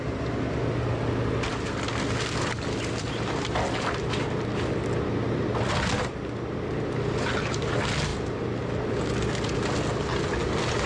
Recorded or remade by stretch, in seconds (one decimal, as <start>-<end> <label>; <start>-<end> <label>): 0.0-10.9 recorded